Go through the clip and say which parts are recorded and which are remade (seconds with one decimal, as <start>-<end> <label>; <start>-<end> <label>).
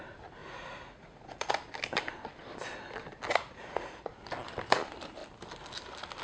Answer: 0.0-0.4 recorded; 0.4-1.5 remade; 1.5-3.3 recorded; 3.3-4.1 remade; 4.1-6.2 recorded